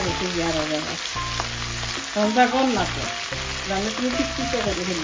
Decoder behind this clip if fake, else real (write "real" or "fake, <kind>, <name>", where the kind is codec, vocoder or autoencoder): real